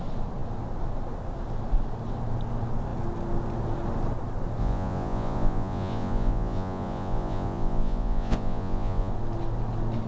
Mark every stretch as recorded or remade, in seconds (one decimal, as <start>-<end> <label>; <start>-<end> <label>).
0.0-4.6 recorded; 4.6-9.1 remade; 9.1-10.1 recorded